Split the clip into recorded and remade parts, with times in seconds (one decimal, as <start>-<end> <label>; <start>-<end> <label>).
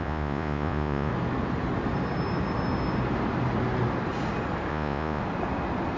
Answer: 0.0-1.1 remade; 1.1-4.7 recorded; 4.7-5.2 remade; 5.2-6.0 recorded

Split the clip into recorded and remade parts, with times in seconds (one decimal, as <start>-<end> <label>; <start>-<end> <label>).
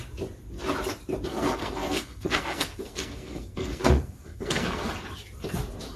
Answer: 0.0-1.3 recorded; 1.3-4.9 remade; 4.9-6.0 recorded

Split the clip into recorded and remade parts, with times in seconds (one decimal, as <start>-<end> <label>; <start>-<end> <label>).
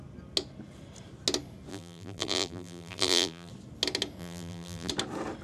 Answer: 0.0-1.7 recorded; 1.7-3.5 remade; 3.5-4.2 recorded; 4.2-4.9 remade; 4.9-5.4 recorded